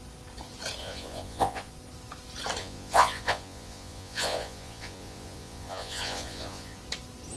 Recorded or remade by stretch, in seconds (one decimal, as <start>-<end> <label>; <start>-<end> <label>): 0.0-0.8 recorded; 0.8-1.7 remade; 1.7-2.6 recorded; 2.6-6.8 remade; 6.8-7.4 recorded